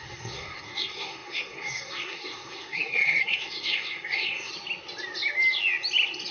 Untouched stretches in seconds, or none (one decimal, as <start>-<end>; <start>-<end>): 4.5-6.3